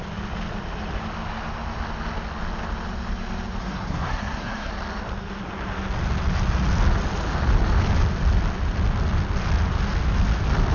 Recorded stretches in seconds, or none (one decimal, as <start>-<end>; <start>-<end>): 0.0-3.6; 4.7-10.7